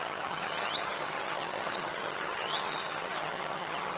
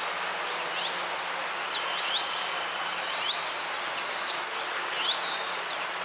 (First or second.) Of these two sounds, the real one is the second